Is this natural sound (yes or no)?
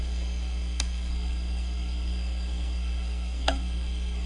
no